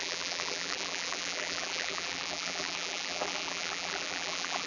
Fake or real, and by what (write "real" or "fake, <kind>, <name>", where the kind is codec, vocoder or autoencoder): fake, vocoder, BigVGAN v2